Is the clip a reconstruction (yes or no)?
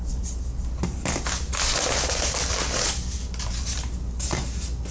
no